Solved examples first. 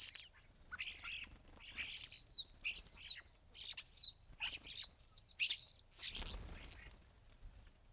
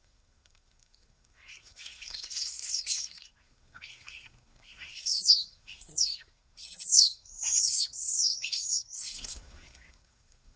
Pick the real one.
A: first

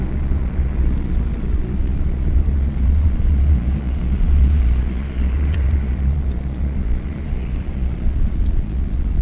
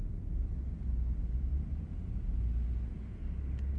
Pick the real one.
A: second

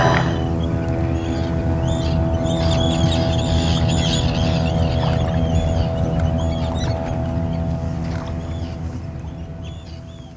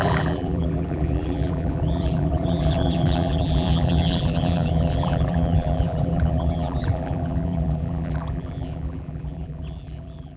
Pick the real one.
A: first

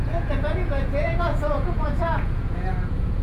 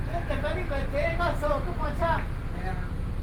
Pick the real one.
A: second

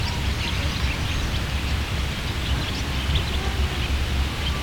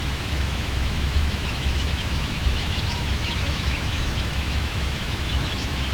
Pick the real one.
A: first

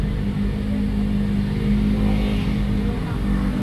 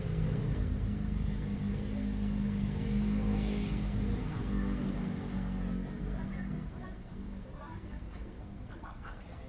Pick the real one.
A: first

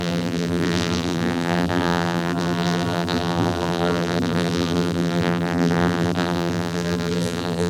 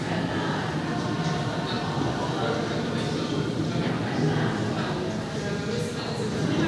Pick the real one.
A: second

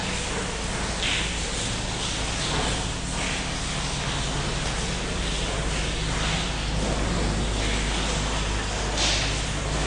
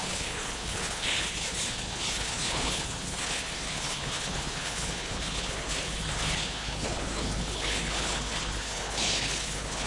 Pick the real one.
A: first